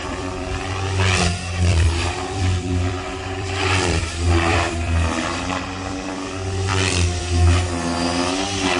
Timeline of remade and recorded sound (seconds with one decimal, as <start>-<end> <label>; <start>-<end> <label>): 0.0-0.6 remade; 0.6-1.7 recorded; 1.7-6.1 remade; 6.1-8.8 recorded